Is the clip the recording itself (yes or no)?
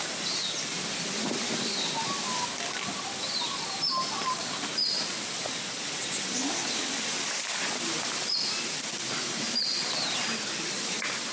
yes